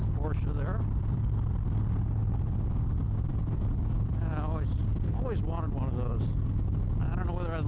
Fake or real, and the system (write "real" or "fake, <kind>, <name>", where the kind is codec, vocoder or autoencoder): real